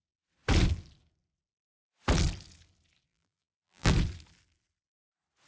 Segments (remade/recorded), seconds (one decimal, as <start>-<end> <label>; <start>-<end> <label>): 0.0-3.1 recorded; 3.1-3.9 remade; 3.9-5.5 recorded

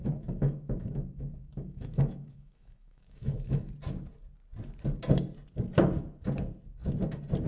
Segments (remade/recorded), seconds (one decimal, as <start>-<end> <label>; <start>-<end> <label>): 0.0-3.7 remade; 3.7-7.5 recorded

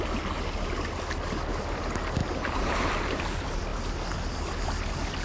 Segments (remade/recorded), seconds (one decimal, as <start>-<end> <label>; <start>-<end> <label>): 0.0-2.2 recorded; 2.2-3.1 remade; 3.1-5.2 recorded

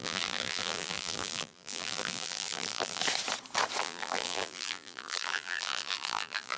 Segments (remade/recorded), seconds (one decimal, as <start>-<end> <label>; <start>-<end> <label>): 0.0-3.0 remade; 3.0-3.8 recorded; 3.8-6.6 remade

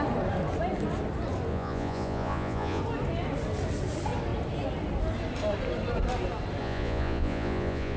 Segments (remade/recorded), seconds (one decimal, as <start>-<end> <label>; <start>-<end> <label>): 0.0-1.5 recorded; 1.5-2.8 remade; 2.8-6.6 recorded; 6.6-8.0 remade